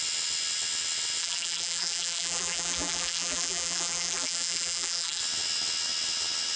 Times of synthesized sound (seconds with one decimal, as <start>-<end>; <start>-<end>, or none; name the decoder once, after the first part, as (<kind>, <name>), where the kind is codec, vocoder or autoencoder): 1.2-5.2 (vocoder, BigVGAN v2)